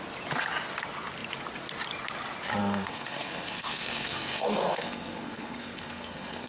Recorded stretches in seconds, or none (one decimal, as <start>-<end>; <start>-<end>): 0.0-2.6

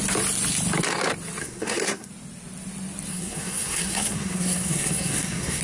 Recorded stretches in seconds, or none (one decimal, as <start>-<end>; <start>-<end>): 0.0-1.4; 2.1-3.1

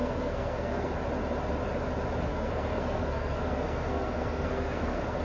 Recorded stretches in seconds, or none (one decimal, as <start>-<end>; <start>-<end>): 0.9-2.3

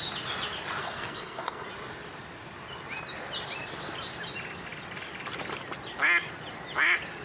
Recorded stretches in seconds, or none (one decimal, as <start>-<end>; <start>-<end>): 0.0-0.8; 1.7-7.2